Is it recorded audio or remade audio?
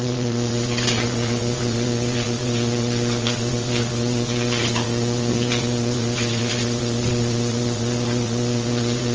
remade